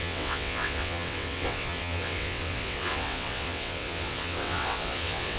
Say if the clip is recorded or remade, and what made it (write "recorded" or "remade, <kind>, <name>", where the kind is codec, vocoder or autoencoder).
remade, vocoder, WaveNeXt